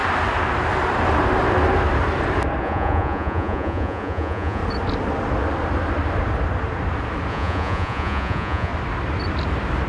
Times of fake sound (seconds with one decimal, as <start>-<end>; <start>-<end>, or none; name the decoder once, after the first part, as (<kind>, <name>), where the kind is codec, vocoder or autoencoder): 2.6-4.6 (vocoder, Vocos); 7.3-8.7